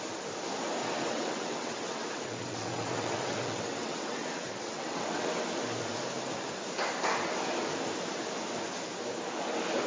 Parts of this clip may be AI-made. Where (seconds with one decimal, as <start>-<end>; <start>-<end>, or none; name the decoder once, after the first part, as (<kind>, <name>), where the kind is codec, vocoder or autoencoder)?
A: 0.8-5.4 (vocoder, WaveNeXt)